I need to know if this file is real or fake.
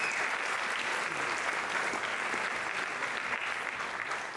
real